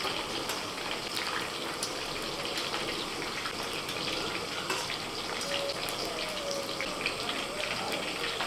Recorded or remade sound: recorded